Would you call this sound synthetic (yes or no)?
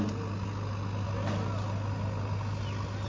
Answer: no